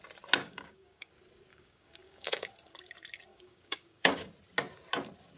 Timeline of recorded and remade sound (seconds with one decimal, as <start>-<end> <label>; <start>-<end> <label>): 0.0-0.4 recorded; 0.4-1.1 remade; 1.1-1.5 recorded; 1.5-2.4 remade; 2.4-3.3 recorded; 3.3-4.3 remade; 4.3-5.4 recorded